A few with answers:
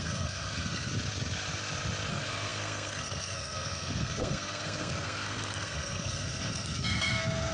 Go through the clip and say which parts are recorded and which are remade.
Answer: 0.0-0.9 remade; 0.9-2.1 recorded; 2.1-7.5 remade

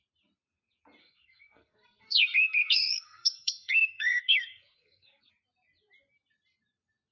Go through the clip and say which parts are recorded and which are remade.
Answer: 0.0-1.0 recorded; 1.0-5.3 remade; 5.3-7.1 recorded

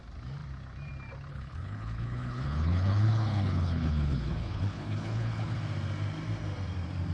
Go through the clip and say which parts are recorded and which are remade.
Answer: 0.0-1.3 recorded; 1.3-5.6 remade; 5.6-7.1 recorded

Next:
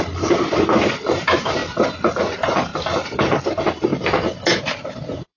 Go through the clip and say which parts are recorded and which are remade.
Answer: 0.0-1.6 remade; 1.6-2.1 recorded; 2.1-5.4 remade

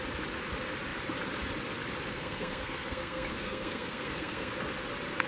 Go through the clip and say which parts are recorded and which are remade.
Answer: 0.0-2.1 recorded; 2.1-4.5 remade; 4.5-5.3 recorded

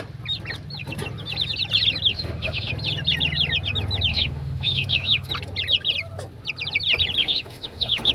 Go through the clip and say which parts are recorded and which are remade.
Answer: 0.0-2.1 recorded; 2.1-2.7 remade; 2.7-4.1 recorded; 4.1-5.3 remade; 5.3-7.2 recorded; 7.2-8.1 remade